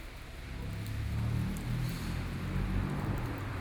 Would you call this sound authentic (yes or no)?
yes